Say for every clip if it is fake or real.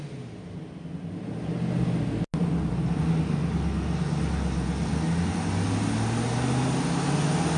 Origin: real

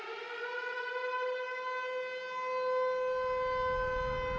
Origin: real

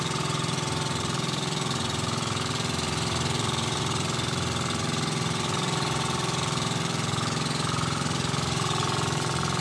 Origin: fake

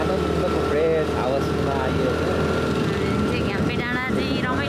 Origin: real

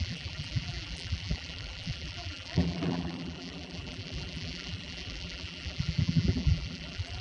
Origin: fake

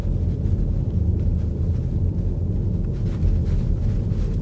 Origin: real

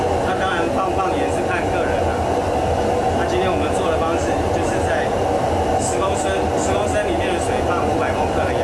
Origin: real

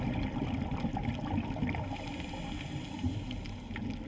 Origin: real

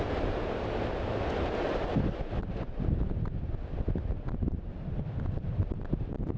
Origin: real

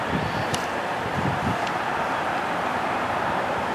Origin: fake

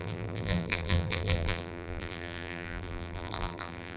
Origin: fake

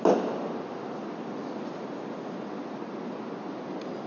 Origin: real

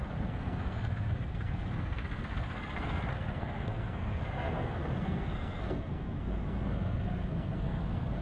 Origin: fake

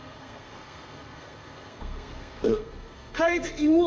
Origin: fake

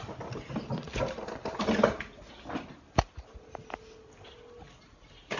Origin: real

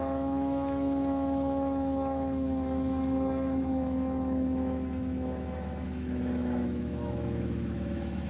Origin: fake